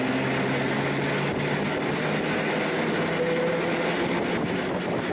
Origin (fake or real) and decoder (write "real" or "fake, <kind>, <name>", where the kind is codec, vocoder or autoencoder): real